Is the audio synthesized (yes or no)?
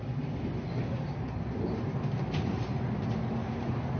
no